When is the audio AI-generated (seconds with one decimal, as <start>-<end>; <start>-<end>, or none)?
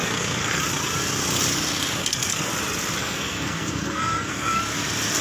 0.0-0.6; 2.0-2.5; 3.0-4.6